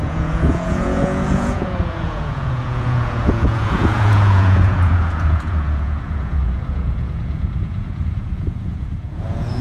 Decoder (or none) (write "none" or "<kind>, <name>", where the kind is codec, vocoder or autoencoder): vocoder, Vocos